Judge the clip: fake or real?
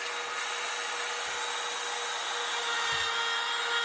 real